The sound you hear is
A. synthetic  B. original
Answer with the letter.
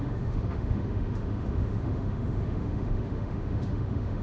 A